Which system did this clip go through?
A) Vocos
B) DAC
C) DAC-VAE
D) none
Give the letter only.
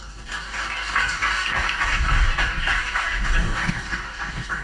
B